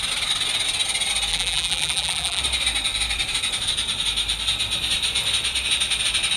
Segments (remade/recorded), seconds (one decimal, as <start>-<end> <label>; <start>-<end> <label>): 0.0-1.3 recorded; 1.3-2.4 remade; 2.4-6.4 recorded